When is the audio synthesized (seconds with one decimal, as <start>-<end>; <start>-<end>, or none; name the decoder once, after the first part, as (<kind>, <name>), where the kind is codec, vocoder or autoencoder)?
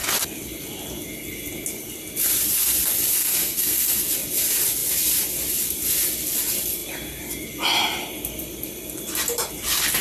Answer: 3.2-4.0 (codec, SNAC)